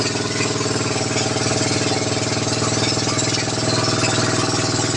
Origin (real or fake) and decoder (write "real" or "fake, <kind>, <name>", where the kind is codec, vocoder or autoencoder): real